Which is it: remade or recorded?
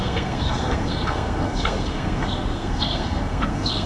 remade